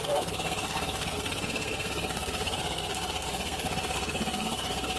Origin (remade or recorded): remade